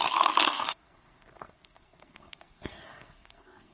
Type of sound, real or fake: fake